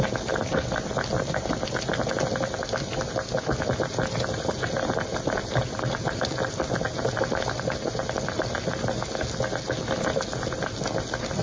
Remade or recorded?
recorded